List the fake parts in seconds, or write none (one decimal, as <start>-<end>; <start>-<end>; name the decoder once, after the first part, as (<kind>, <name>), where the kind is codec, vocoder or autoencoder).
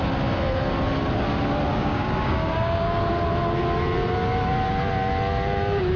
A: 1.7-3.0 (codec, DAC)